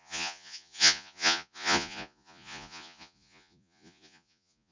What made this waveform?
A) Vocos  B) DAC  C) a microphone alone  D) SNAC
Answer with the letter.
A